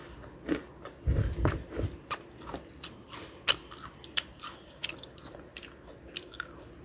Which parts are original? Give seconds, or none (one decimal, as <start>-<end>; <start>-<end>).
0.0-6.8